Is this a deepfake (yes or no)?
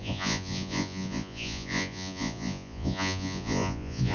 yes